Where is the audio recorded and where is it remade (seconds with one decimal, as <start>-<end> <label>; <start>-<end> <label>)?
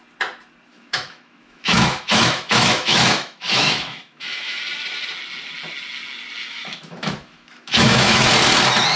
0.0-0.7 recorded; 0.7-4.6 remade; 4.6-6.4 recorded; 6.4-8.3 remade; 8.3-9.0 recorded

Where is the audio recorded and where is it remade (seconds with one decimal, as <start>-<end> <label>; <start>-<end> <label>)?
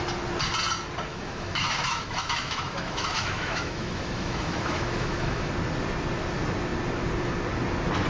0.0-1.1 recorded; 1.1-5.5 remade; 5.5-8.1 recorded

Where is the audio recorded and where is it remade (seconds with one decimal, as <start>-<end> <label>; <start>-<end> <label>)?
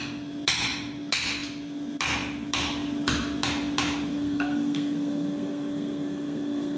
0.0-4.1 recorded; 4.1-6.8 remade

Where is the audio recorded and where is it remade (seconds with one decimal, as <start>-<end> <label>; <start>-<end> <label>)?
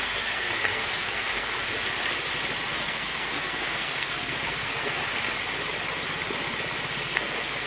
0.0-1.7 remade; 1.7-2.7 recorded; 2.7-5.0 remade; 5.0-7.0 recorded; 7.0-7.7 remade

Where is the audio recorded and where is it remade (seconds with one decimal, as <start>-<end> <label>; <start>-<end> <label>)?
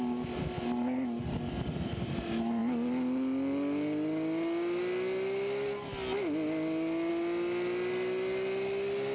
0.0-9.1 recorded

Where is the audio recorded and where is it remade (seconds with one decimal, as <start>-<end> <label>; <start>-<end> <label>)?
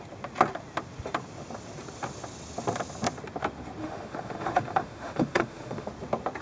0.0-3.8 recorded; 3.8-5.9 remade; 5.9-6.4 recorded